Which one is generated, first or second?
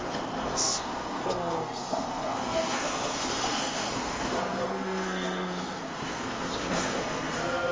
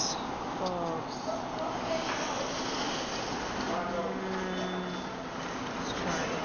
first